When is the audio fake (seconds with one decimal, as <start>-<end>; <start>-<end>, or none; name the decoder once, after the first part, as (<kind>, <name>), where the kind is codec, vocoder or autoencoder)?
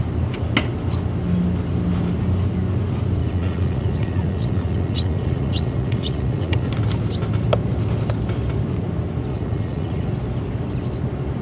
3.2-6.7 (vocoder, Vocos); 9.3-10.1